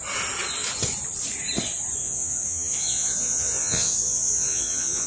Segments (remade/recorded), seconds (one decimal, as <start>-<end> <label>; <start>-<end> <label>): 0.0-2.0 recorded; 2.0-5.1 remade